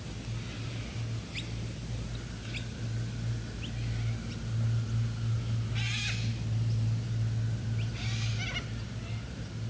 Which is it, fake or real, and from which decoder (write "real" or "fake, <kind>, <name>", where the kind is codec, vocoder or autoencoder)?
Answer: real